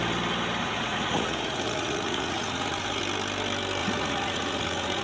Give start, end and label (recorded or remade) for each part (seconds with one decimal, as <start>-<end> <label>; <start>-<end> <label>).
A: 0.0-0.6 recorded; 0.6-3.0 remade; 3.0-3.8 recorded; 3.8-5.0 remade

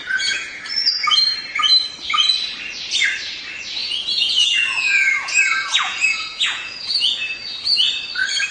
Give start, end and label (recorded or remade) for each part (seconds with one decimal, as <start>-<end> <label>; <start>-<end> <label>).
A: 0.0-0.6 remade; 0.6-3.8 recorded; 3.8-7.2 remade; 7.2-8.5 recorded